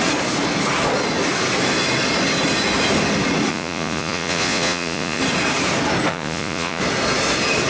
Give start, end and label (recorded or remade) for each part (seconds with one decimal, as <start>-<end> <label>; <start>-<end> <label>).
0.0-3.5 recorded; 3.5-5.2 remade; 5.2-6.1 recorded; 6.1-6.8 remade; 6.8-7.7 recorded

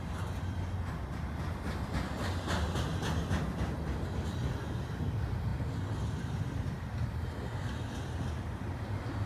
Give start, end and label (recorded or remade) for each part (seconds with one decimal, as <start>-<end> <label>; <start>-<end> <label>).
0.0-9.3 recorded

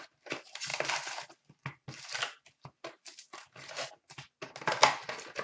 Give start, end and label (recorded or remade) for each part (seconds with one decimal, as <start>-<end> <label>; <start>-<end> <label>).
0.0-5.4 recorded

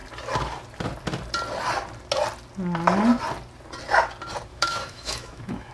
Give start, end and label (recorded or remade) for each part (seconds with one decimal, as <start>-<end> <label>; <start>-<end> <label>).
0.0-4.5 recorded; 4.5-5.7 remade

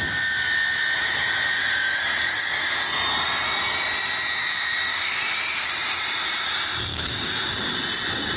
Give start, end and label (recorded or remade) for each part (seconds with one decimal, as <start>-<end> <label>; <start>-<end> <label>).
0.0-1.6 recorded; 1.6-2.6 remade; 2.6-4.9 recorded; 4.9-5.7 remade; 5.7-6.9 recorded; 6.9-7.5 remade; 7.5-8.4 recorded

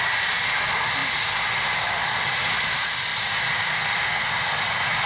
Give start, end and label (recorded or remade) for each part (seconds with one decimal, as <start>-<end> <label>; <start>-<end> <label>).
0.0-5.1 recorded

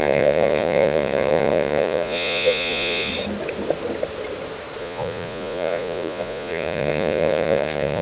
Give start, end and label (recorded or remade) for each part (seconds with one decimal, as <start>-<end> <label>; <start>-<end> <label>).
0.0-3.1 remade; 3.1-4.8 recorded; 4.8-8.0 remade